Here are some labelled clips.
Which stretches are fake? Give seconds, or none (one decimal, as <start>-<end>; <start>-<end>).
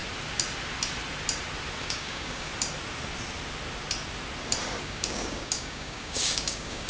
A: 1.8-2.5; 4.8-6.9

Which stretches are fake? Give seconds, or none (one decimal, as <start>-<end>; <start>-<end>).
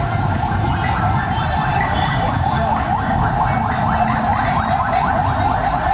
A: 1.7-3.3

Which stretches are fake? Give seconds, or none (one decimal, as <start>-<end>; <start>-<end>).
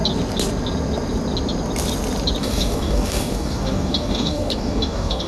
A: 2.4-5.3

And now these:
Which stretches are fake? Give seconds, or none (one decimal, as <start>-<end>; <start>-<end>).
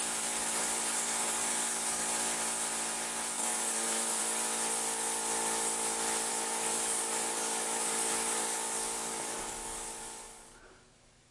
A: 0.0-2.0; 3.2-4.2; 6.3-11.3